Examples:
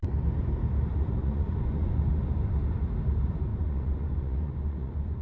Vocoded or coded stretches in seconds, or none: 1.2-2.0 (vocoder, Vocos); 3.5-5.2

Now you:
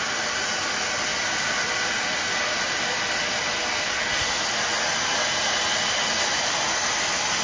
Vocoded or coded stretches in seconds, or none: 1.1-3.3 (vocoder, BigVGAN v2); 6.3-7.0

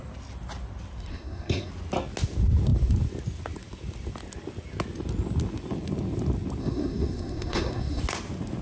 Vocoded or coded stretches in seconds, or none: 1.1-1.7 (codec, SNAC); 6.6-8.0

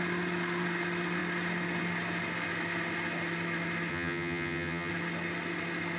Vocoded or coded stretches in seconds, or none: 3.9-4.9 (vocoder, HiFi-GAN)

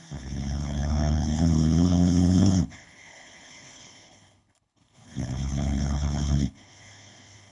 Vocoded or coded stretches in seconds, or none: 0.0-7.5 (codec, HILCodec)